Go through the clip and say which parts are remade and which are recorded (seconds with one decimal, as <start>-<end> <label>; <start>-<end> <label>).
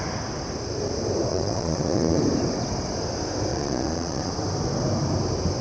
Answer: 0.0-1.3 recorded; 1.3-2.2 remade; 2.2-3.5 recorded; 3.5-4.3 remade; 4.3-5.6 recorded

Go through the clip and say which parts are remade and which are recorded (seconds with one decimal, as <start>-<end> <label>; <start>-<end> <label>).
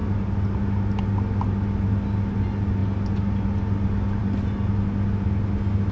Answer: 0.0-5.9 recorded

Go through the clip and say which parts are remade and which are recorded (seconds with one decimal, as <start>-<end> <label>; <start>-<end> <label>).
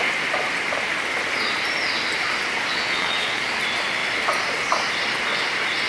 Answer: 0.0-2.7 recorded; 2.7-3.4 remade; 3.4-5.9 recorded